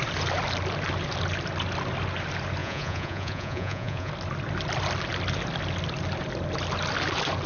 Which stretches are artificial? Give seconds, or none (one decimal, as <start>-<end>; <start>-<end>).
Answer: 2.6-4.1